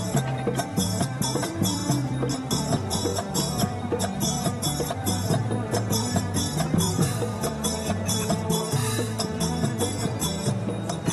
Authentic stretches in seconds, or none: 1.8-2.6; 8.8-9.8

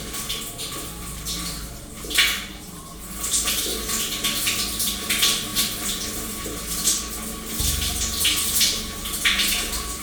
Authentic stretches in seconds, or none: 0.0-10.0